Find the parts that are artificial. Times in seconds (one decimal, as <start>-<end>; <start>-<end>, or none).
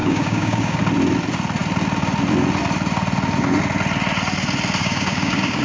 0.0-0.8; 4.8-5.6